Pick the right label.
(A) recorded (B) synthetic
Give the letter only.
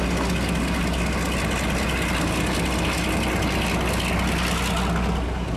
A